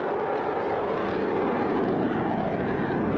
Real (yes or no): yes